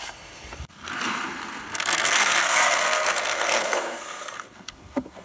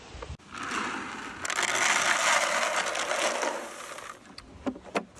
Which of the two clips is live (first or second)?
second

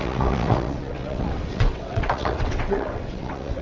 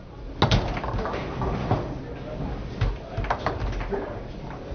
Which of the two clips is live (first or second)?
second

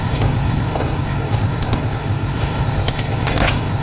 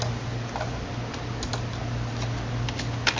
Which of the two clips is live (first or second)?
second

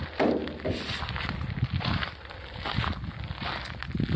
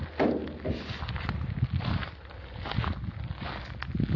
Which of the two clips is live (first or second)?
second